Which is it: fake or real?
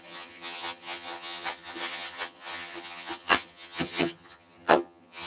fake